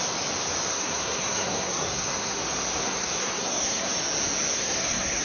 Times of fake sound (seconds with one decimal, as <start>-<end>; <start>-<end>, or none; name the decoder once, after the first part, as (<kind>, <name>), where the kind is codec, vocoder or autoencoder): 0.7-2.4 (codec, SNAC); 2.8-3.9; 4.5-5.2